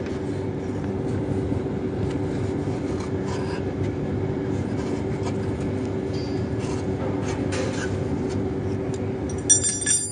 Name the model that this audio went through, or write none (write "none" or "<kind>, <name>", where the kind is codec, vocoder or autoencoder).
none